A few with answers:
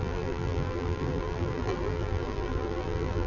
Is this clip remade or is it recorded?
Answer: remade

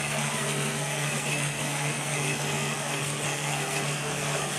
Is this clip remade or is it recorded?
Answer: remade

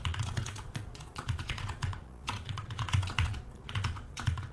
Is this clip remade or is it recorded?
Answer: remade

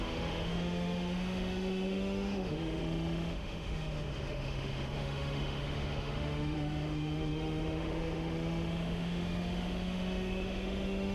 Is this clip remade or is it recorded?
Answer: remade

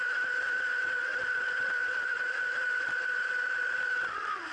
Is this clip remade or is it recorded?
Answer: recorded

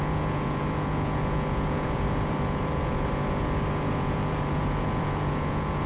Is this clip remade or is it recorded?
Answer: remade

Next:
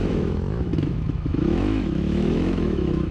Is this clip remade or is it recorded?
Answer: remade